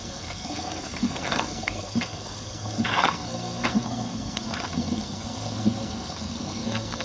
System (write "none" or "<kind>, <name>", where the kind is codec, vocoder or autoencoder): codec, SNAC